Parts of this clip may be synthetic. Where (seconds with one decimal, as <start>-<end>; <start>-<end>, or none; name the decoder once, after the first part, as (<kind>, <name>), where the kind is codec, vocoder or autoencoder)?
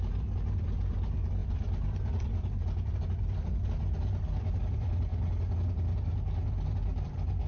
0.0-5.1 (vocoder, BigVGAN v2); 6.7-7.5